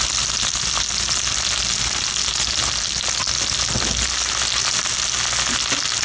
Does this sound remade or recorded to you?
recorded